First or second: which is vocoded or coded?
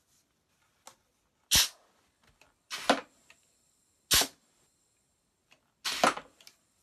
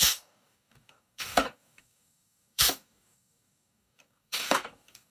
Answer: second